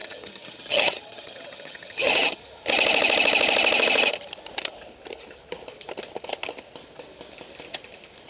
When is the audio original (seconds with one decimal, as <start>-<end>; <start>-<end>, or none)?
2.4-8.3